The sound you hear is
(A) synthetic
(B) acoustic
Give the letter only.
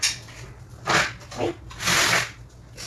B